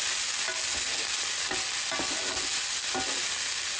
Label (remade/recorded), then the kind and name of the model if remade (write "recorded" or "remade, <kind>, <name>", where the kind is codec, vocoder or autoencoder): recorded